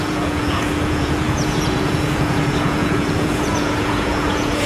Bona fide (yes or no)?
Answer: no